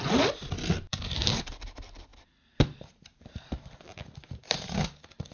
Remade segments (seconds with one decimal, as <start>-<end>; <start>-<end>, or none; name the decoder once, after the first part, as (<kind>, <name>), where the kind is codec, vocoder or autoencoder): 0.9-1.5 (vocoder, BigVGAN v2); 2.1-4.8